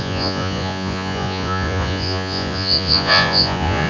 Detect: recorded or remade remade